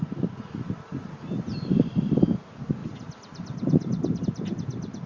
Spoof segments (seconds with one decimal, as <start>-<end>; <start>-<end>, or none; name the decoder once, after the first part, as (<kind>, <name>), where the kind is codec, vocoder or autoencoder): 0.9-1.7 (vocoder, BigVGAN v2)